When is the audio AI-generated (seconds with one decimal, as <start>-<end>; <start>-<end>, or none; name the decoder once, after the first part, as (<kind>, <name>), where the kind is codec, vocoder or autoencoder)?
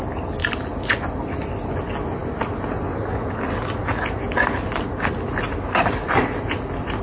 none